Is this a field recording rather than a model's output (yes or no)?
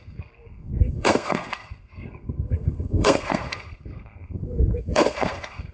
no